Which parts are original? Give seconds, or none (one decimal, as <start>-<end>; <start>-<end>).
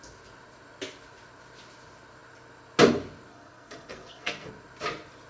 0.0-3.3; 4.5-5.3